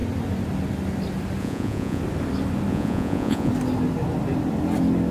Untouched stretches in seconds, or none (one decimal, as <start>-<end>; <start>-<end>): 0.0-1.4; 2.0-2.7; 3.5-5.1